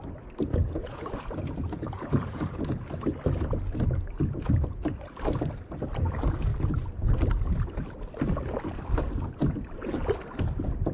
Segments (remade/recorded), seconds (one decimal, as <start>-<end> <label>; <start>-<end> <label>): 0.0-0.5 recorded; 0.5-2.6 remade; 2.6-10.9 recorded

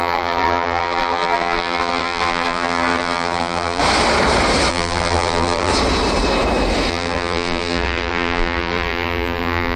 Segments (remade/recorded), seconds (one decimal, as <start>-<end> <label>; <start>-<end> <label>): 0.0-3.8 remade; 3.8-4.7 recorded; 4.7-5.7 remade; 5.7-6.9 recorded; 6.9-9.8 remade

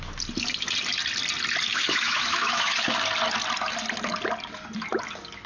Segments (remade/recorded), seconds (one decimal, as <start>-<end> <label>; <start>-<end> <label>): 0.0-1.7 recorded; 1.7-3.0 remade; 3.0-5.5 recorded

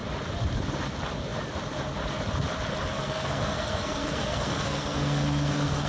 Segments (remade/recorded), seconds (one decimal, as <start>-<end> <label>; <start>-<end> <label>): 0.0-2.9 recorded; 2.9-5.9 remade

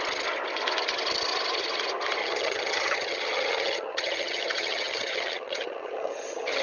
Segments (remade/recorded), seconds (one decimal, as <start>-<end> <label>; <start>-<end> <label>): 0.0-2.2 recorded; 2.2-6.6 remade

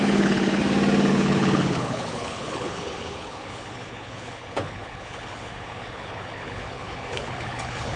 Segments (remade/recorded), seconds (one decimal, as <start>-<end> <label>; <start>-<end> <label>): 0.0-0.6 remade; 0.6-1.1 recorded; 1.1-8.0 remade

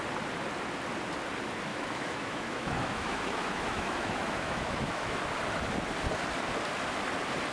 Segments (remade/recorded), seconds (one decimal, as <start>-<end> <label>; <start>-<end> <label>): 0.0-1.7 recorded; 1.7-5.2 remade; 5.2-7.5 recorded

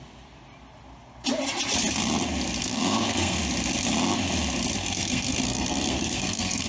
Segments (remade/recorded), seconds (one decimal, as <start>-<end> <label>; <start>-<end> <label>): 0.0-2.6 recorded; 2.6-3.4 remade; 3.4-4.8 recorded; 4.8-6.7 remade